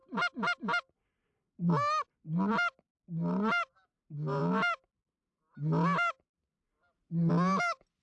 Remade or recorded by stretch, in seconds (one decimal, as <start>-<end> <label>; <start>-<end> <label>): 0.0-8.0 recorded